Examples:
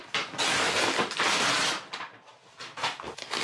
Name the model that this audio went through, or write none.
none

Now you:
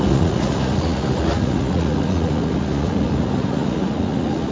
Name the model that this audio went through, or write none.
vocoder, Vocos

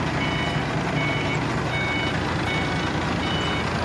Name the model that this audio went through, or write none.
none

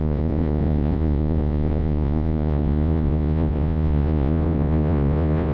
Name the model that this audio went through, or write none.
vocoder, Vocos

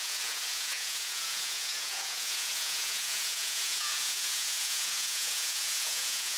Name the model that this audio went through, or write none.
vocoder, Vocos